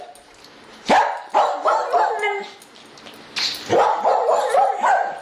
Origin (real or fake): real